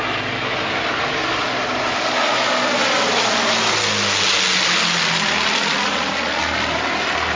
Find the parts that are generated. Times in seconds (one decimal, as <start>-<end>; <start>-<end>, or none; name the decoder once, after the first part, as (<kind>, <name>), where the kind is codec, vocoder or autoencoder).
none